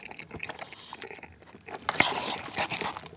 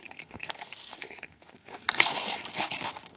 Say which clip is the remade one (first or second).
second